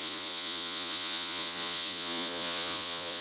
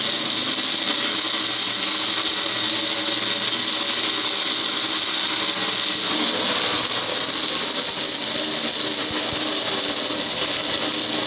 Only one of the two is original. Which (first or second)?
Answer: second